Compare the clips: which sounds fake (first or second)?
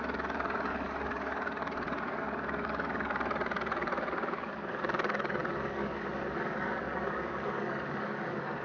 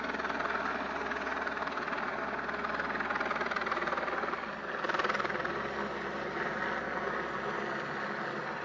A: first